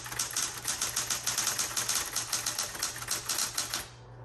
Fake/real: real